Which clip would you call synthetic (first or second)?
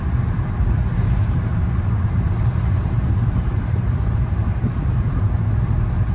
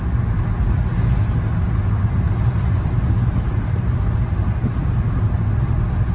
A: first